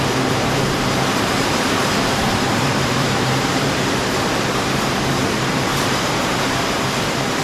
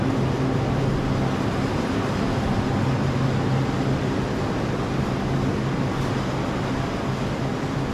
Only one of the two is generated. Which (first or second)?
first